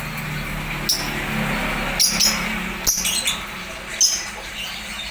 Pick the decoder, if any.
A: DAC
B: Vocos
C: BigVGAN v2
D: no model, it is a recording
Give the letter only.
D